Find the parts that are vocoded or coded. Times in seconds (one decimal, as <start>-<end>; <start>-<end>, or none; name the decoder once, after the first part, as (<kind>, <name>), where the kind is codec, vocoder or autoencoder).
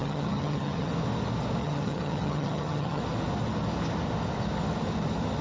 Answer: 0.0-0.9 (vocoder, HiFi-GAN); 1.6-3.0